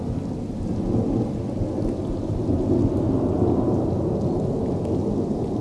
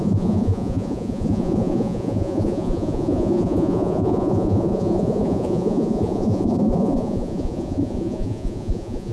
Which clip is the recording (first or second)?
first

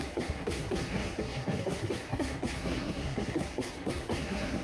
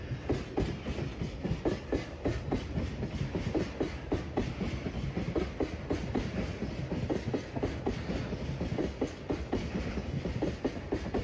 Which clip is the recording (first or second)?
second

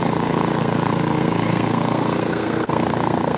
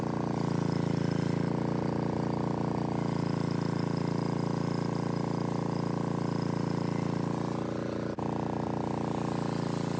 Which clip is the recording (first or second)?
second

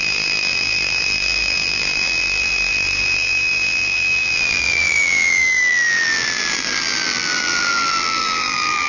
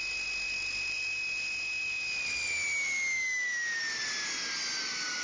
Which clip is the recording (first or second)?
second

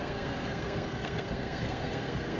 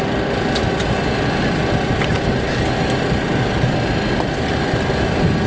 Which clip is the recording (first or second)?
second